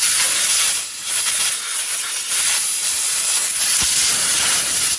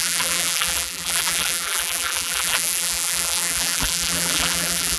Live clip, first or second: first